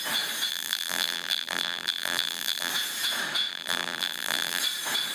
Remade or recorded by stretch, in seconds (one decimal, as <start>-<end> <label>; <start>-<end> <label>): 0.0-0.5 recorded; 0.5-2.7 remade; 2.7-3.5 recorded; 3.5-4.6 remade; 4.6-5.1 recorded